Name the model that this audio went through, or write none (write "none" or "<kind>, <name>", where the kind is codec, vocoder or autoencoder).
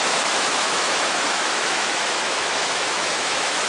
autoencoder, DAC-VAE